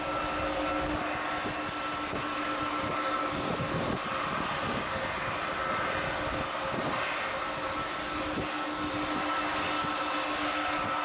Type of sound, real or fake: real